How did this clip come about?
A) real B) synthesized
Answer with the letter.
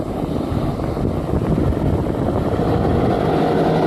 A